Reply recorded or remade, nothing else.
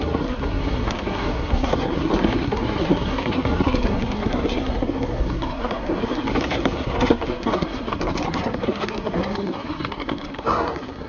remade